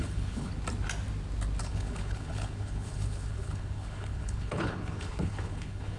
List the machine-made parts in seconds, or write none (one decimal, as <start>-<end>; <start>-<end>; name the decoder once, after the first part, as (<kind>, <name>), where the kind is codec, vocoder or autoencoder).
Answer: 0.0-0.5 (codec, HILCodec); 1.6-6.0